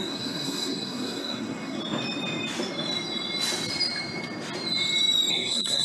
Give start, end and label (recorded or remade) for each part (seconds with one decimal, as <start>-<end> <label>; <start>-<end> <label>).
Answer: 0.0-1.8 remade; 1.8-5.3 recorded; 5.3-5.8 remade